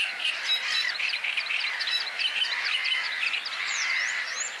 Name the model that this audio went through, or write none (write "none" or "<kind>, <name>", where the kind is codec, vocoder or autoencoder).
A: vocoder, BigVGAN v2